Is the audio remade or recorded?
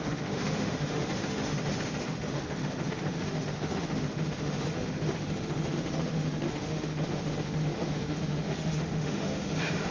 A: remade